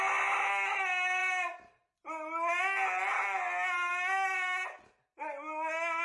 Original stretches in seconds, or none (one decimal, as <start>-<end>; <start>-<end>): 0.0-6.0